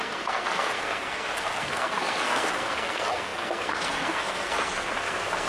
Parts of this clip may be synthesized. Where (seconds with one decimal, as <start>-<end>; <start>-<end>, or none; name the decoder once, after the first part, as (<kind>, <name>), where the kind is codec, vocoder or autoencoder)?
0.0-5.5 (codec, SNAC)